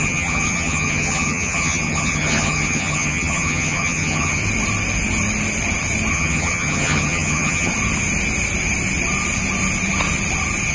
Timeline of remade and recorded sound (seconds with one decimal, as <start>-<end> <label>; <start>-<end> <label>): 0.0-4.4 remade; 4.4-6.1 recorded; 6.1-7.7 remade; 7.7-10.7 recorded